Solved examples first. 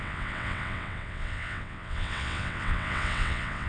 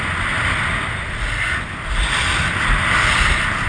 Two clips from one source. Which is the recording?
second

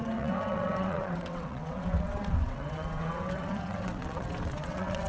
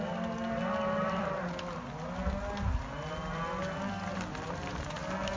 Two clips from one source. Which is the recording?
second